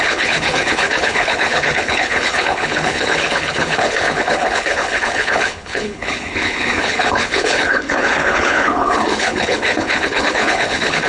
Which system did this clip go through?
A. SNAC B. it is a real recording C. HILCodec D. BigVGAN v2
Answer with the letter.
C